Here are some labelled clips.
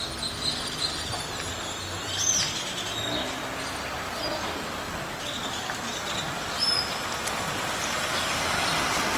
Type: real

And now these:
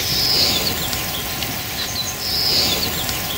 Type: real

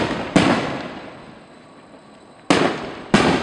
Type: real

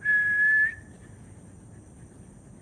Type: real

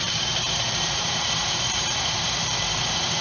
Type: fake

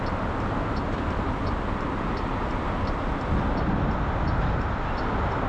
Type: real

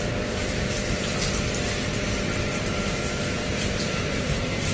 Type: fake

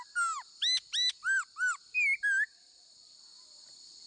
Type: real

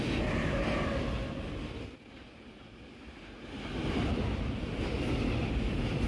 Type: real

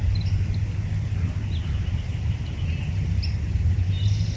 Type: real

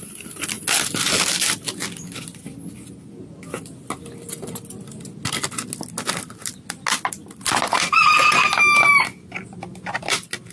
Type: real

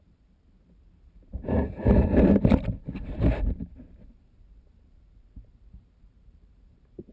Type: fake